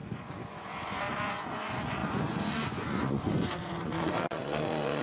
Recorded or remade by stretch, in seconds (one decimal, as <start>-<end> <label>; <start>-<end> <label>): 0.0-5.0 remade